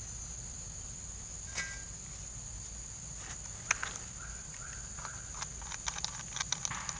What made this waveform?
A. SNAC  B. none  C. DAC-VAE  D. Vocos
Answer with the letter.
B